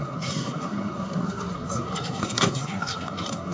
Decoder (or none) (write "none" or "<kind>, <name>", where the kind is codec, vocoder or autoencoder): codec, SNAC